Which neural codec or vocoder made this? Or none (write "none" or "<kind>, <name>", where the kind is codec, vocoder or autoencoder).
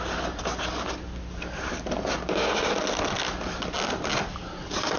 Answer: none